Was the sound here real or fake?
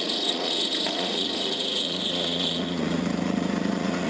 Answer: fake